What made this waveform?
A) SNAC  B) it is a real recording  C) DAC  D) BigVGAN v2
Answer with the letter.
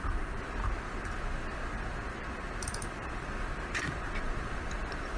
D